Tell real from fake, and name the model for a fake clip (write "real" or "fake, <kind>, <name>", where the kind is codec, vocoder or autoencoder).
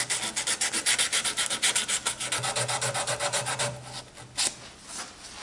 real